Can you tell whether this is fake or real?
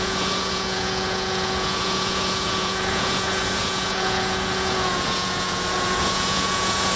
fake